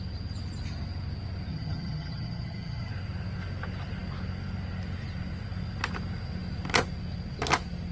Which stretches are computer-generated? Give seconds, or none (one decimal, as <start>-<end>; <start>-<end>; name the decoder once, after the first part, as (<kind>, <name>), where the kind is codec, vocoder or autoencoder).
1.5-2.9 (vocoder, HiFi-GAN)